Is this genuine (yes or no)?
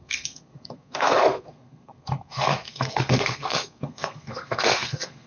no